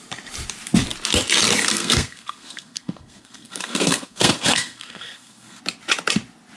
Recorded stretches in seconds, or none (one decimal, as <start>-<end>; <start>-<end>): 0.0-1.6; 5.6-6.6